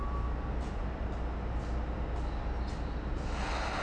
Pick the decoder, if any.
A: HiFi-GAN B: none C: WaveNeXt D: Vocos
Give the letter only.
B